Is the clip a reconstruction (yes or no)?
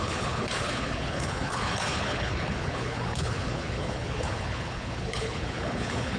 yes